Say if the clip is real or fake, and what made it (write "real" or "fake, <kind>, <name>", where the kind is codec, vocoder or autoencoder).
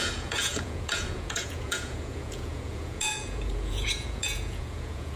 fake, vocoder, Vocos